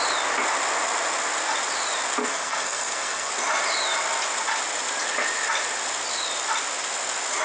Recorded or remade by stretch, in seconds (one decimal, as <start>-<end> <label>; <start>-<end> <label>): 0.0-2.2 recorded; 2.2-3.3 remade; 3.3-7.4 recorded